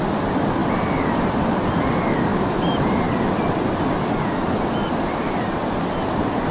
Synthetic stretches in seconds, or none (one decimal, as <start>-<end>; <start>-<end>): none